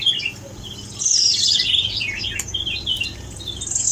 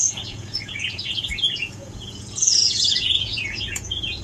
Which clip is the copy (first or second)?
second